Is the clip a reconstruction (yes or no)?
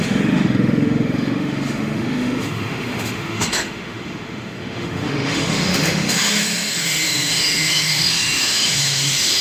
yes